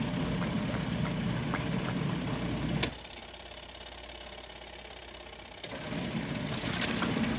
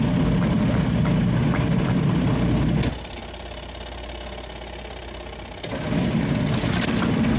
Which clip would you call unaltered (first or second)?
second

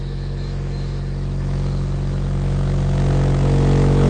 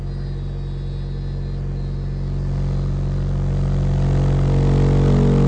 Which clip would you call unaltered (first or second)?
second